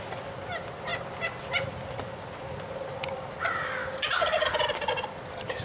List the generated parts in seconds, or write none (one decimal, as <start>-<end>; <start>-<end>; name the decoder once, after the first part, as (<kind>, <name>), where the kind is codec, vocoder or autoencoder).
none

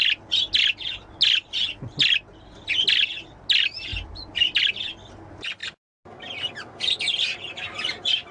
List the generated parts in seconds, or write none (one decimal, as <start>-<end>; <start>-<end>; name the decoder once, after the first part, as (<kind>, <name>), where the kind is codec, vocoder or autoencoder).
none

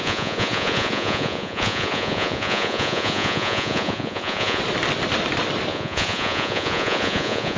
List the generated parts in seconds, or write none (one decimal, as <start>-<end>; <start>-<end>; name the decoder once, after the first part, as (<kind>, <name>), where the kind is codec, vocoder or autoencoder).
0.0-4.6 (vocoder, Vocos); 5.7-7.6

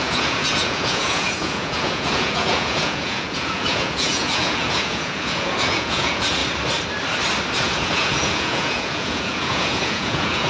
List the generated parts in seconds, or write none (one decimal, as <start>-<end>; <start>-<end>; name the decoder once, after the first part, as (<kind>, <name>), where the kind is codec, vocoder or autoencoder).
0.0-6.4 (vocoder, Vocos); 7.6-10.5

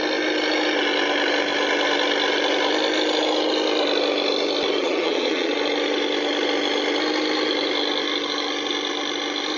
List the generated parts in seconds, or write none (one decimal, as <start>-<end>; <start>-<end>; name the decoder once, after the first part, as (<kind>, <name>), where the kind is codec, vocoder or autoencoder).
4.8-5.5 (vocoder, Vocos)